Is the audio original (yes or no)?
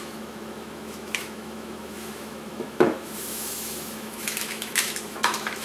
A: no